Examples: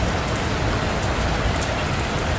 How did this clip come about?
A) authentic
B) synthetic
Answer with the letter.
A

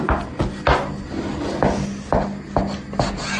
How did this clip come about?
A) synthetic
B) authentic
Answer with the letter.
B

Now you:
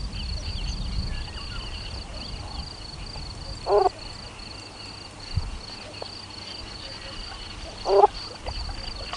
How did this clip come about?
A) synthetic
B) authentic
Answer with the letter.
B